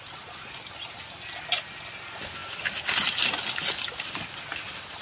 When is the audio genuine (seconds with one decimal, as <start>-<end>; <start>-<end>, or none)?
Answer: 0.0-5.0